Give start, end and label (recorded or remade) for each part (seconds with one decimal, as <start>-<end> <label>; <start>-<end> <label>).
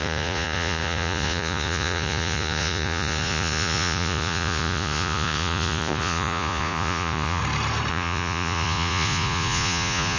0.0-7.4 remade; 7.4-7.9 recorded; 7.9-10.2 remade